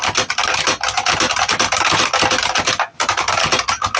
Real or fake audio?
real